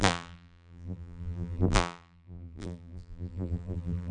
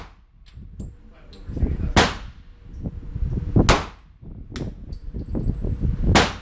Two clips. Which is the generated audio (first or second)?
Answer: first